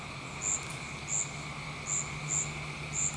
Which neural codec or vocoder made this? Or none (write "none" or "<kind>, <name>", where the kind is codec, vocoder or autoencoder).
none